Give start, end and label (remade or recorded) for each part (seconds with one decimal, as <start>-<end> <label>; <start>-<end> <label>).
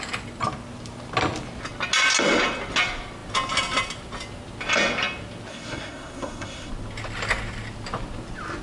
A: 0.0-5.5 recorded; 5.5-6.7 remade; 6.7-8.6 recorded